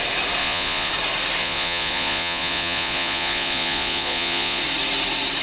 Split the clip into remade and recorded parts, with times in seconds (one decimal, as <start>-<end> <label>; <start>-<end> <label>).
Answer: 0.0-0.4 recorded; 0.4-0.9 remade; 0.9-1.4 recorded; 1.4-4.6 remade; 4.6-5.4 recorded